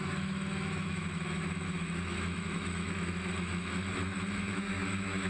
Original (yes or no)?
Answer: no